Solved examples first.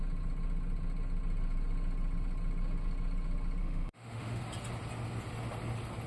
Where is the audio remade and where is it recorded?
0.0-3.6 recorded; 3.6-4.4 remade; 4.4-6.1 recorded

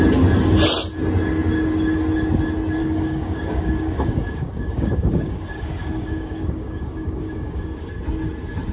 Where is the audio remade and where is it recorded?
0.0-2.8 recorded; 2.8-7.9 remade; 7.9-8.7 recorded

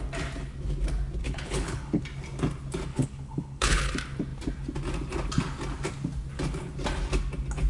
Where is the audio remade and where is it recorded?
0.0-1.2 recorded; 1.2-2.0 remade; 2.0-2.9 recorded; 2.9-3.9 remade; 3.9-7.7 recorded

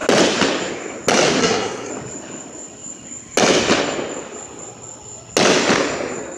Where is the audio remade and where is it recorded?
0.0-1.4 recorded; 1.4-1.9 remade; 1.9-6.4 recorded

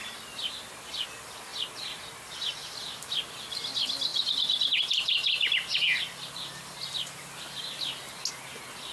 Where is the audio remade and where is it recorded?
0.0-1.5 recorded; 1.5-2.7 remade; 2.7-8.9 recorded

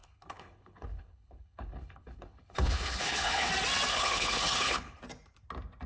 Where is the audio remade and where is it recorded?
0.0-3.5 remade; 3.5-3.9 recorded; 3.9-5.0 remade; 5.0-5.9 recorded

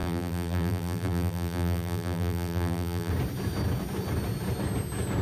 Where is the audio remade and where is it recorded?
0.0-3.1 remade; 3.1-5.2 recorded

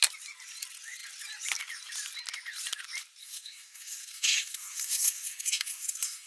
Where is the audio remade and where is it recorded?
0.0-3.2 recorded; 3.2-6.3 remade